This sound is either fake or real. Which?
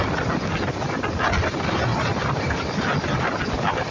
real